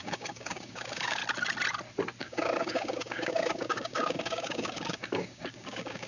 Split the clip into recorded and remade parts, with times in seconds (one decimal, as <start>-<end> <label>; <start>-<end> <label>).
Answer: 0.0-1.2 remade; 1.2-2.2 recorded; 2.2-6.1 remade